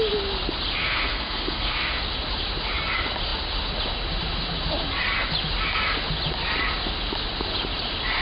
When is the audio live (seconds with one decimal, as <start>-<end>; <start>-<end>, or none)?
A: 0.0-0.8; 2.0-8.2